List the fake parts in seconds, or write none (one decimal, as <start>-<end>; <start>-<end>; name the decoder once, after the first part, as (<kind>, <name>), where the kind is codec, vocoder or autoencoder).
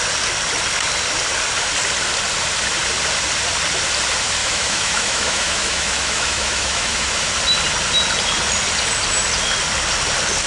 4.4-7.3 (autoencoder, DAC-VAE)